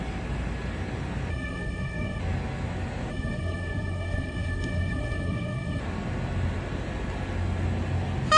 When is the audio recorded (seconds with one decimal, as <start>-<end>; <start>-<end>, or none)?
0.0-1.3; 2.2-3.1; 5.8-8.4